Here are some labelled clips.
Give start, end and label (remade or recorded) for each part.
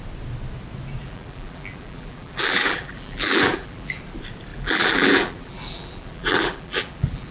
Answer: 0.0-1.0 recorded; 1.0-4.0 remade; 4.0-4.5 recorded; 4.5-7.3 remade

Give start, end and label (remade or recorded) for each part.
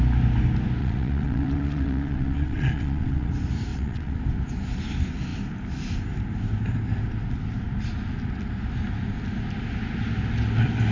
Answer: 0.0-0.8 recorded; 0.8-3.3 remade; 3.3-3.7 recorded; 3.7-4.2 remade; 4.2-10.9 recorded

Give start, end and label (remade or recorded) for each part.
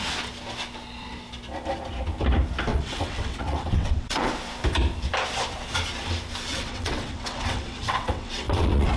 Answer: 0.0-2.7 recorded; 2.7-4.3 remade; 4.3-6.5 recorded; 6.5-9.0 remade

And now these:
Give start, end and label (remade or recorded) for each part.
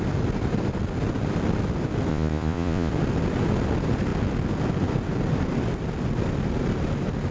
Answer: 0.0-2.1 recorded; 2.1-2.9 remade; 2.9-7.3 recorded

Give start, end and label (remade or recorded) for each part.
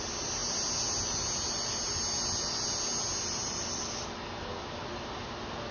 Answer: 0.0-5.7 recorded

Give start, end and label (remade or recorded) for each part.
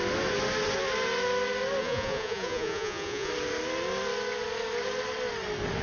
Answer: 0.0-1.8 recorded; 1.8-3.3 remade; 3.3-5.8 recorded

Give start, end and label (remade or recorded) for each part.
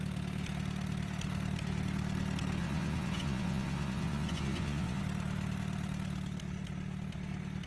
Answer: 0.0-2.6 recorded; 2.6-5.0 remade; 5.0-7.7 recorded